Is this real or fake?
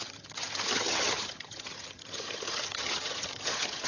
fake